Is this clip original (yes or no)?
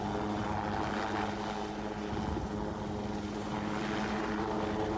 yes